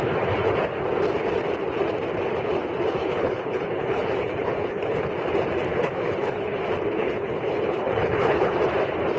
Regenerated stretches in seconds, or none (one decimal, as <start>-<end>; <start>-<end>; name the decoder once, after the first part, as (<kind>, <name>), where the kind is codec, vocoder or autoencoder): 3.0-5.0 (codec, HILCodec); 5.7-6.6; 7.0-8.6